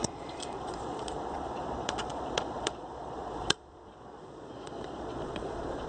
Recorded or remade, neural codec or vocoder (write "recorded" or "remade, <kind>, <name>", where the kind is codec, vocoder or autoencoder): remade, vocoder, Vocos